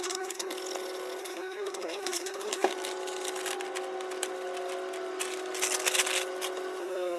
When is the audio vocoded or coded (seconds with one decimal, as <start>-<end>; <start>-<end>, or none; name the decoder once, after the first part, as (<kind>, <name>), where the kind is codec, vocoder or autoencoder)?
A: 0.0-0.5 (codec, SNAC); 1.2-2.7; 6.8-7.2